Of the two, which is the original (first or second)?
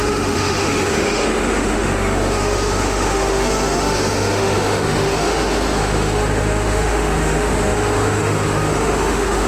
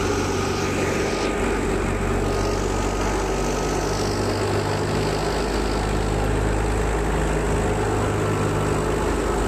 second